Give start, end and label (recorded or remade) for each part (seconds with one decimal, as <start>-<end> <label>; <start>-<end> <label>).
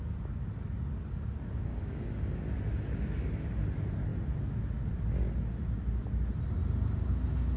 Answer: 0.0-1.7 recorded; 1.7-2.4 remade; 2.4-7.6 recorded